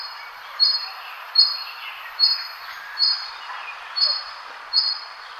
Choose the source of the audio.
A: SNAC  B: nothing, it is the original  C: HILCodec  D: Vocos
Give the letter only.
B